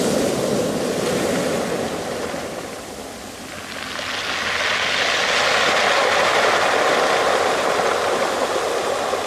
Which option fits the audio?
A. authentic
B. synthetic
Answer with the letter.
A